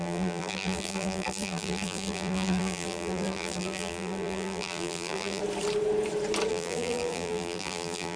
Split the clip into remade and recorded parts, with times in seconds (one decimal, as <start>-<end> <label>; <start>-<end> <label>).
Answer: 0.0-5.4 remade; 5.4-6.5 recorded; 6.5-8.2 remade